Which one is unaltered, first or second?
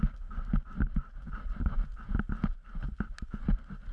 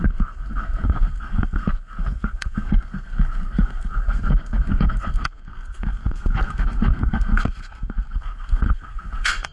first